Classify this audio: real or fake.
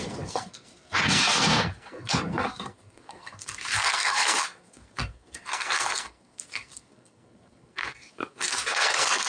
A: fake